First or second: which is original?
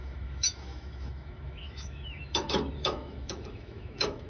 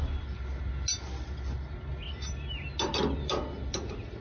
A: second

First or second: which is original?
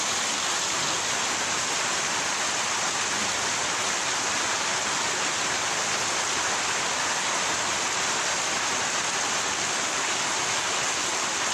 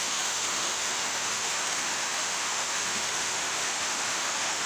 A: first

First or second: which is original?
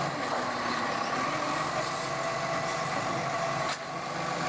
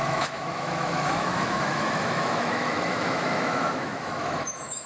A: first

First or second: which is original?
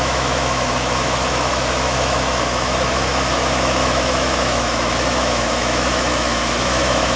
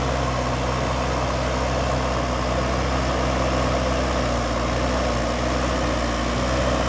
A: second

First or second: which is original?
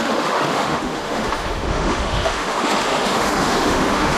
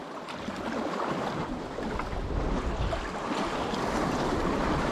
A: second